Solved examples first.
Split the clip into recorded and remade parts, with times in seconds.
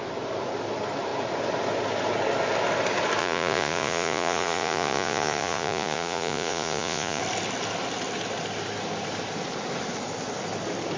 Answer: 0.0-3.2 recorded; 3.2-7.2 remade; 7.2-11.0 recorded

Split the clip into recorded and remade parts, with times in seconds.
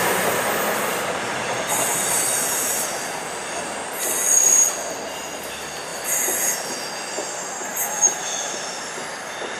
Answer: 0.0-9.6 recorded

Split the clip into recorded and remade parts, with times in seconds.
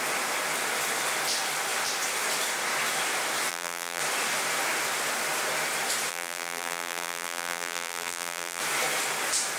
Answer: 0.0-3.5 recorded; 3.5-4.0 remade; 4.0-6.1 recorded; 6.1-8.6 remade; 8.6-9.6 recorded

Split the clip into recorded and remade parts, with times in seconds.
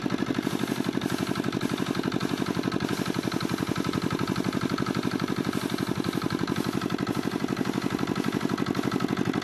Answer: 0.0-9.4 recorded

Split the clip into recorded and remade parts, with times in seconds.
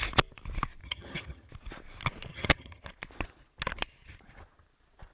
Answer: 0.0-0.8 recorded; 0.8-1.5 remade; 1.5-2.3 recorded; 2.3-2.8 remade; 2.8-5.1 recorded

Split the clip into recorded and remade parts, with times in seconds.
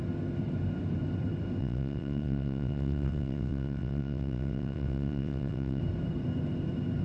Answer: 0.0-1.6 recorded; 1.6-5.8 remade; 5.8-7.0 recorded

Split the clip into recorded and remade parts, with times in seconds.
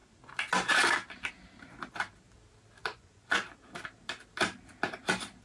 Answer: 0.0-2.8 recorded; 2.8-3.4 remade; 3.4-5.4 recorded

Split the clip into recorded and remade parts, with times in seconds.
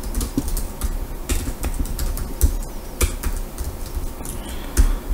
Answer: 0.0-5.1 recorded